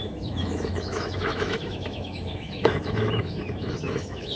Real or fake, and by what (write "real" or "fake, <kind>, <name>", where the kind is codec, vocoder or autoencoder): fake, autoencoder, DAC-VAE